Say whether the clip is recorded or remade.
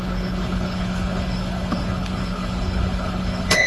remade